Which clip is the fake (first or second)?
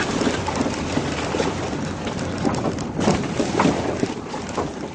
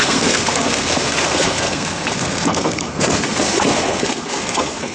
second